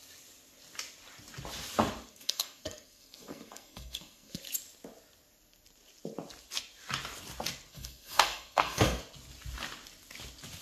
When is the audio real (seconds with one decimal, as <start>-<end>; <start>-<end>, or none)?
0.0-2.1; 4.4-7.7; 9.0-10.6